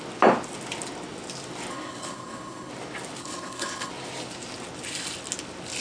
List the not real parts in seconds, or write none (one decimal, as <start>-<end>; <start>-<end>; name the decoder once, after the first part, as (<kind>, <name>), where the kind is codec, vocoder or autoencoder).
1.7-2.7 (codec, HILCodec); 3.2-3.9